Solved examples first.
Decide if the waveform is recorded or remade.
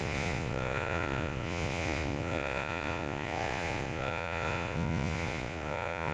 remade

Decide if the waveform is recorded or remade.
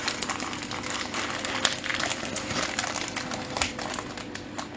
recorded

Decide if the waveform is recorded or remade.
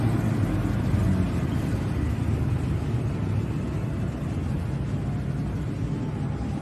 recorded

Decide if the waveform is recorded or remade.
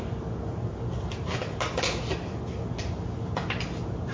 recorded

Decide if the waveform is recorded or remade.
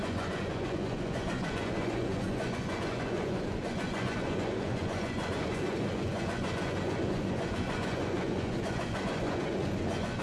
remade